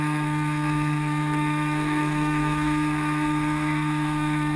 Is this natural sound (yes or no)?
no